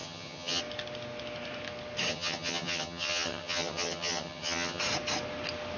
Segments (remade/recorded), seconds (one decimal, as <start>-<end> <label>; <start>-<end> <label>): 0.0-0.6 remade; 0.6-2.1 recorded; 2.1-4.8 remade; 4.8-5.8 recorded